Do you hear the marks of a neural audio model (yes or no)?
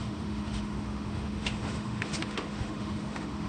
yes